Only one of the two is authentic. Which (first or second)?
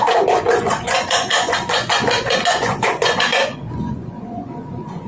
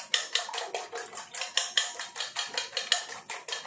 second